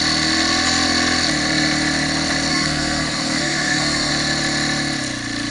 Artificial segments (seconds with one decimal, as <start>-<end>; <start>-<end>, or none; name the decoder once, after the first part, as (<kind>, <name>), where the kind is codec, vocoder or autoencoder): 2.5-4.1 (codec, SNAC)